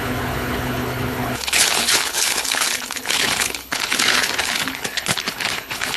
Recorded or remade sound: remade